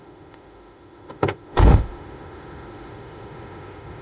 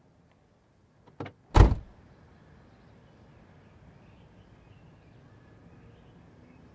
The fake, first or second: first